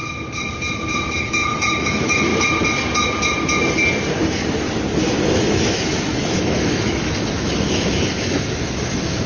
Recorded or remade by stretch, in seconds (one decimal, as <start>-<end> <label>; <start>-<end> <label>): 0.0-1.2 recorded; 1.2-2.3 remade; 2.3-5.2 recorded; 5.2-9.3 remade